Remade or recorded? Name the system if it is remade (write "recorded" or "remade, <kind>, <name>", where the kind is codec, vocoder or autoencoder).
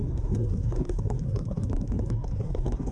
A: remade, codec, SNAC